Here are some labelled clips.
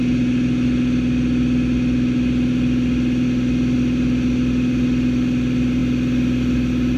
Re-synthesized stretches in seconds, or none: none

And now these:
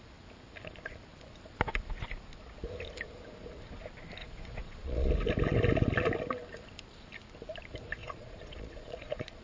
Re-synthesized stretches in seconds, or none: 4.2-5.1 (vocoder, Vocos); 8.0-9.4

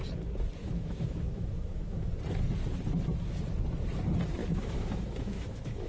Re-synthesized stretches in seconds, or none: 0.6-2.1 (autoencoder, DAC-VAE); 4.4-5.9

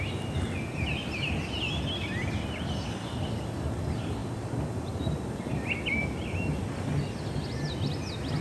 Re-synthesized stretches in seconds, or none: none